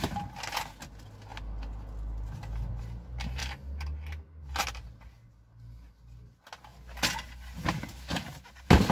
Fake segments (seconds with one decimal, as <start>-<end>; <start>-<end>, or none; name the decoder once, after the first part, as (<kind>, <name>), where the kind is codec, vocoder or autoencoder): none